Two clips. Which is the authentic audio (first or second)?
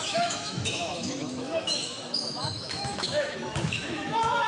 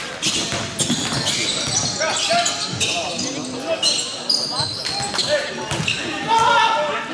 second